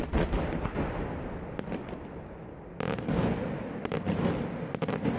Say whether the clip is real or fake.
real